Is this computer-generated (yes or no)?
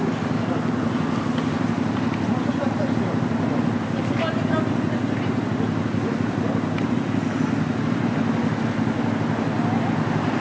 no